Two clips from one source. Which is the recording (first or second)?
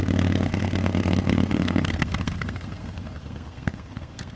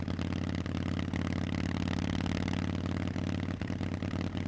second